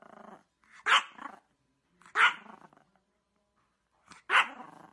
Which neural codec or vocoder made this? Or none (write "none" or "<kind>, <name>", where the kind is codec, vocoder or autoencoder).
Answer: none